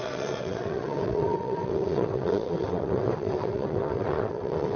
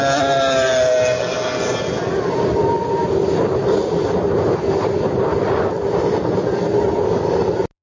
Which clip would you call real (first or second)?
second